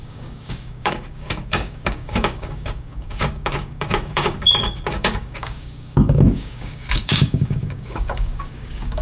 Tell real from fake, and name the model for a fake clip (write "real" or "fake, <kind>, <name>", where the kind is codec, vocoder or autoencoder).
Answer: fake, codec, DAC